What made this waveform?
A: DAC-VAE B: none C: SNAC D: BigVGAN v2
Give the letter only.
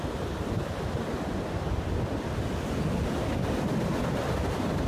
B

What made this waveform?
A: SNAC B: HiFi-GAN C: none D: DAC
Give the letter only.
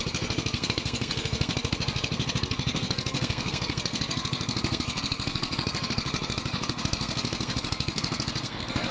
A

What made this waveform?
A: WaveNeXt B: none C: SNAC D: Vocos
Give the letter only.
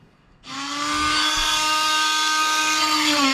C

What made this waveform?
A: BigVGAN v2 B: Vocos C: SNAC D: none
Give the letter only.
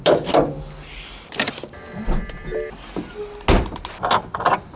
D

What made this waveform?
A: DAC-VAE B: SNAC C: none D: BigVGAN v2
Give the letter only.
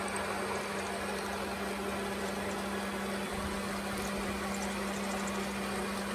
C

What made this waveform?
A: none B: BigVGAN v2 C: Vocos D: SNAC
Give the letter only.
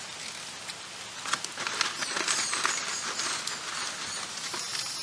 A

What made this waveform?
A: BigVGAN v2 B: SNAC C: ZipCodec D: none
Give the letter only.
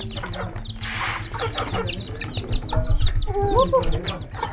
D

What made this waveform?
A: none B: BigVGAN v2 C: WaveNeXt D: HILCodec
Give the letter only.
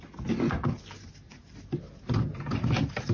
A